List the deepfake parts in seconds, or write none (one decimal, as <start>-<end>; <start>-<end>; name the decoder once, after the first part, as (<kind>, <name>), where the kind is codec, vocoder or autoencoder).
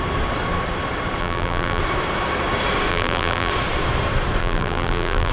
1.2-1.8 (vocoder, BigVGAN v2); 2.9-3.5; 4.4-5.3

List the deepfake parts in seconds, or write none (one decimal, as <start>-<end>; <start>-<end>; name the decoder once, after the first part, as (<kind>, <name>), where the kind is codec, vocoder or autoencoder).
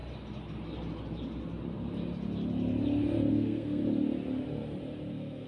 3.3-3.8 (codec, SNAC); 5.1-5.5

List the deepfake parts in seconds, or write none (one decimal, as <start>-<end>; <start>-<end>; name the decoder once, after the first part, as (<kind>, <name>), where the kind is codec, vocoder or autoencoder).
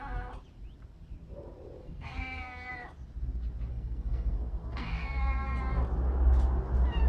1.8-2.7 (codec, SNAC); 3.7-5.6